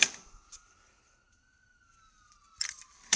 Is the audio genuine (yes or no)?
no